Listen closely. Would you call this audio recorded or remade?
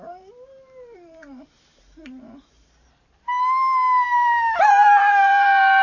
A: remade